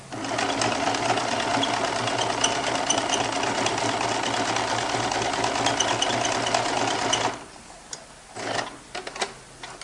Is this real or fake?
real